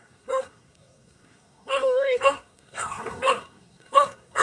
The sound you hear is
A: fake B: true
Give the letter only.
A